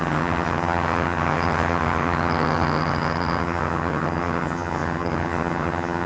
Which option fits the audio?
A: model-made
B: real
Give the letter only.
A